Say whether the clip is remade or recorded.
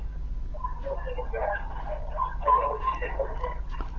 recorded